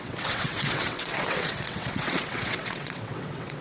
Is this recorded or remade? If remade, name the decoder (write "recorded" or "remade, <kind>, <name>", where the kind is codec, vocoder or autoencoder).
remade, vocoder, WaveNeXt